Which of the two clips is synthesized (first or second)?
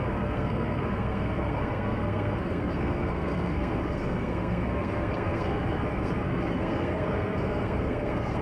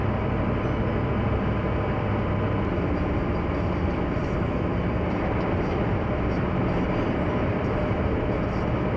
first